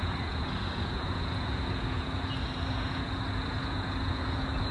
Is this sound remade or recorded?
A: remade